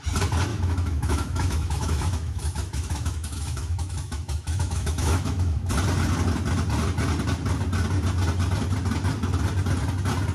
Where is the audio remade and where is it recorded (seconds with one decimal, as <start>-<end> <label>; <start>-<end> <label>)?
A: 0.0-0.5 recorded; 0.5-5.7 remade; 5.7-10.3 recorded